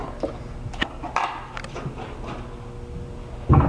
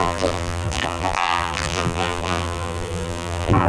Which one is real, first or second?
first